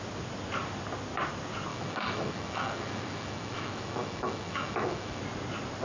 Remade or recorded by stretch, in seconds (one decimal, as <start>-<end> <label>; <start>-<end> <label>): 0.0-1.7 recorded; 1.7-5.2 remade; 5.2-5.8 recorded